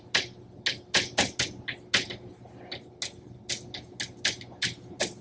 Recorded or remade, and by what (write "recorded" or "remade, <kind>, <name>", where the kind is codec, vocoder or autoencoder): recorded